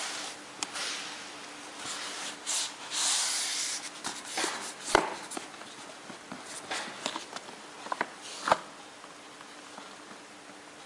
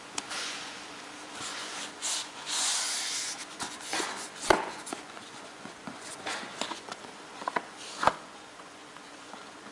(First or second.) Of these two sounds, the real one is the first